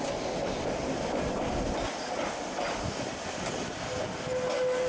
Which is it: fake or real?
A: real